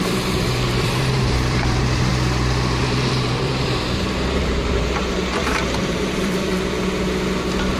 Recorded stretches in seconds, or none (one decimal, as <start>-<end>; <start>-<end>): 2.1-2.8; 6.5-7.8